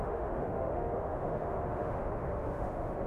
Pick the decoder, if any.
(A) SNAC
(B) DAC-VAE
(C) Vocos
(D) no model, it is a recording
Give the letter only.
B